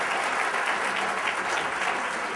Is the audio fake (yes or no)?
no